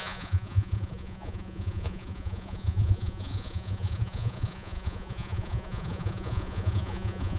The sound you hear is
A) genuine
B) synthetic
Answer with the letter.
B